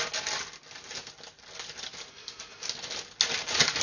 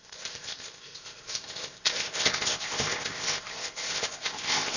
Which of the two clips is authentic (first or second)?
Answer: first